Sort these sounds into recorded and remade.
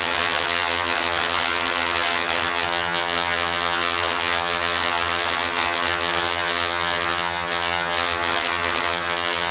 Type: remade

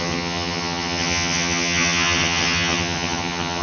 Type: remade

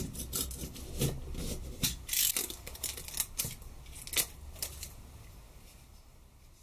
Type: recorded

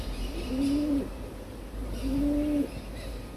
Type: recorded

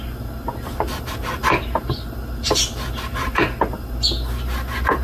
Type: recorded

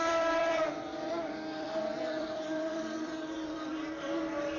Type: remade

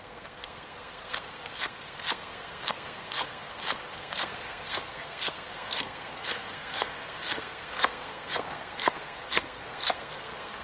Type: remade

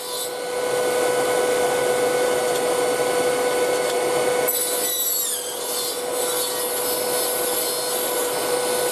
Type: recorded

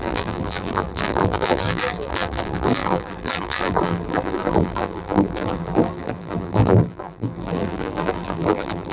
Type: remade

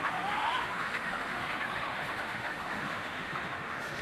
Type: remade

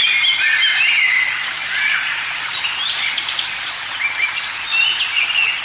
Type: recorded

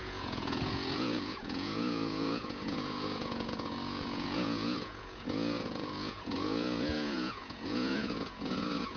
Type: remade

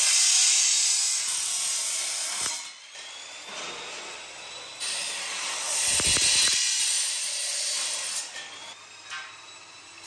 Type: recorded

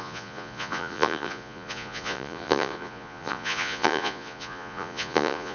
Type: remade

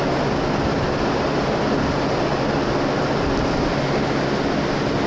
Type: recorded